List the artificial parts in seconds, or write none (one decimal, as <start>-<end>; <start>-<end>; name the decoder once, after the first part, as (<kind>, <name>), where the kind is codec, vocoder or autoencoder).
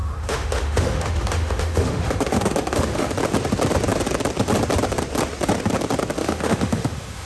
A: 0.0-3.1 (autoencoder, DAC-VAE); 6.2-7.3